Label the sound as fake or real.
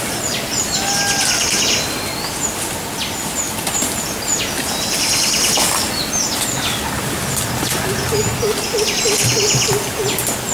real